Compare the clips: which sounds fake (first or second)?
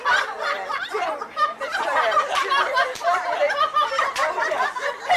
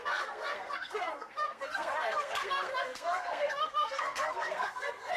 second